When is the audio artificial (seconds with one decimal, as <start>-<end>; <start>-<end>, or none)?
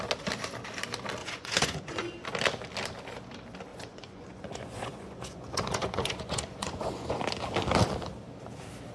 1.2-2.1; 3.7-7.2